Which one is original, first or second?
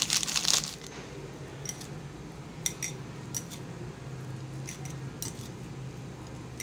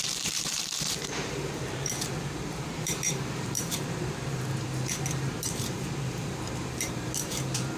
first